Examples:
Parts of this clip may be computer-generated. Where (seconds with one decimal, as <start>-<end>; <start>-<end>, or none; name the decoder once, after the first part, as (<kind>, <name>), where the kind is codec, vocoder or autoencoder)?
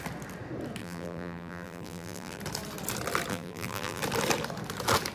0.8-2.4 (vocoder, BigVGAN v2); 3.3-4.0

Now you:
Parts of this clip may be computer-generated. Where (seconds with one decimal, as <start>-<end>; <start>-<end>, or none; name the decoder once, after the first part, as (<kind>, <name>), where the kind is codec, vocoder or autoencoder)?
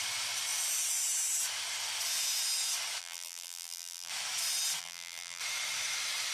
3.0-4.1 (vocoder, BigVGAN v2); 4.8-5.4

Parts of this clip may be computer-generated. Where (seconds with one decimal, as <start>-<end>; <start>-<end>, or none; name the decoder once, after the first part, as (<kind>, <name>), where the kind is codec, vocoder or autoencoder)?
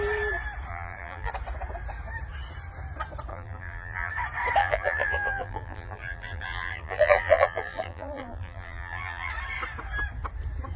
0.7-1.3 (vocoder, BigVGAN v2); 3.3-4.1; 4.6-9.3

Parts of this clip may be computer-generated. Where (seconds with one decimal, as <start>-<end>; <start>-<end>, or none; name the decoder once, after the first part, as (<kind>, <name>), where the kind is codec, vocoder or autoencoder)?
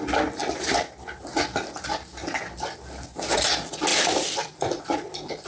3.9-4.8 (vocoder, BigVGAN v2)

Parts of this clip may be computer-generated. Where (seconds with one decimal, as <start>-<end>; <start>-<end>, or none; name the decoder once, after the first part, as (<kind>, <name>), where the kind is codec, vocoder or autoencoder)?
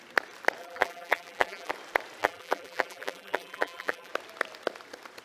0.6-1.7 (vocoder, BigVGAN v2); 2.2-4.1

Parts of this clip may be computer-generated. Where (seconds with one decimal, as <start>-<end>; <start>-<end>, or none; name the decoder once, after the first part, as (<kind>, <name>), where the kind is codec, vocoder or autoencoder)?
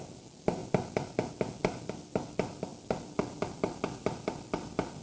none